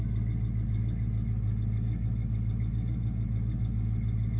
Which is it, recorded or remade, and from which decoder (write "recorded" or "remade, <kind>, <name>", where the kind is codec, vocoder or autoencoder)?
recorded